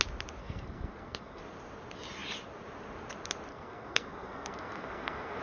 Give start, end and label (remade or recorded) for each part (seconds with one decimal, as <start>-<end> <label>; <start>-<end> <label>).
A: 0.0-0.4 recorded; 0.4-1.4 remade; 1.4-3.5 recorded; 3.5-5.4 remade